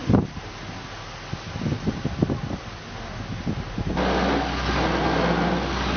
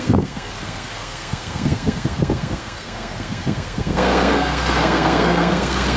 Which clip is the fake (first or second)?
second